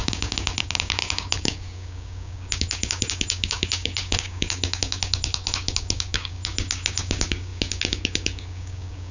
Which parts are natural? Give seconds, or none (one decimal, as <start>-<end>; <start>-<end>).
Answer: none

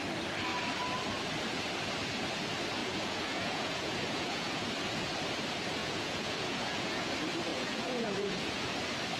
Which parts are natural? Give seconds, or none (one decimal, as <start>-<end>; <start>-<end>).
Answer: 0.0-2.8; 4.7-5.8; 7.1-7.5; 8.7-9.2

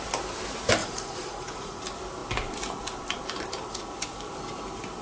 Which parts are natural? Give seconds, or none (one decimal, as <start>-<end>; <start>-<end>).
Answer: 0.0-0.8; 1.8-5.0